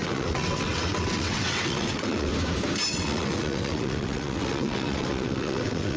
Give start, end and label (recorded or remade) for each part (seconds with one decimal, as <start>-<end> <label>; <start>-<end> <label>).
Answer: 0.0-2.3 remade; 2.3-2.9 recorded; 2.9-6.0 remade